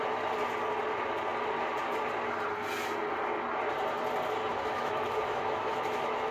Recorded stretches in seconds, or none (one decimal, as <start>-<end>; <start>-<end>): 0.0-4.5